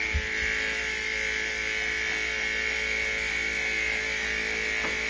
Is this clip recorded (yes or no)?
yes